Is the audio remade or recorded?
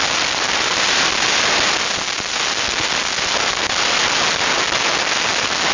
recorded